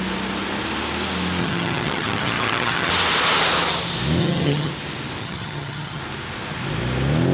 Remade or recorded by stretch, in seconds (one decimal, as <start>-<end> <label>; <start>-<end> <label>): 0.0-1.4 recorded; 1.4-2.9 remade; 2.9-4.2 recorded; 4.2-4.7 remade; 4.7-5.2 recorded; 5.2-6.0 remade; 6.0-7.3 recorded